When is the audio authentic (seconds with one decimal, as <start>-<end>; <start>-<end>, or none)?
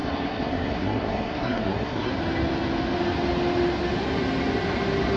2.1-5.2